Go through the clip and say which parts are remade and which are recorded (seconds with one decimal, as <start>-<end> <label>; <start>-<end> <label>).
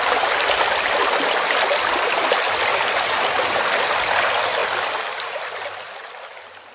0.0-6.7 recorded